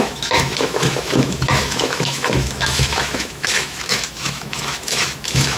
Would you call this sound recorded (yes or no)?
no